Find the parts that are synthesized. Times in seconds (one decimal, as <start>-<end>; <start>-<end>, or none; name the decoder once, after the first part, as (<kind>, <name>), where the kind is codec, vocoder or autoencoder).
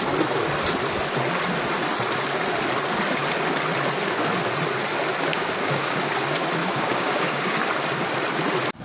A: 5.3-6.0 (codec, DAC); 6.6-7.7